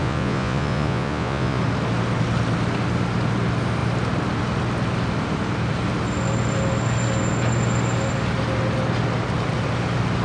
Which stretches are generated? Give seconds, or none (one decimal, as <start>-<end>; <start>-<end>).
0.0-1.6